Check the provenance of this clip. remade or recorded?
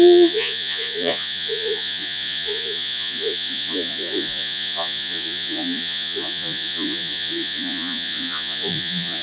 remade